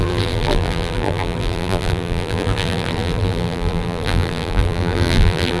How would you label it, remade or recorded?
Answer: remade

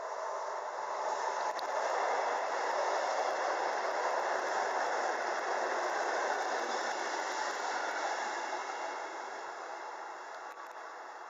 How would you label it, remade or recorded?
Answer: recorded